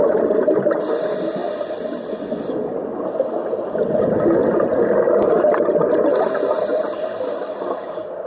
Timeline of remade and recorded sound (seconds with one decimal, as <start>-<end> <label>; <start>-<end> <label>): 0.0-8.3 recorded